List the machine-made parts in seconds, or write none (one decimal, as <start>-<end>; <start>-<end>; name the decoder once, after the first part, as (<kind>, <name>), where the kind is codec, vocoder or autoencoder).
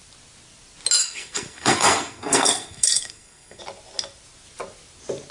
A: 1.0-3.6 (codec, SNAC)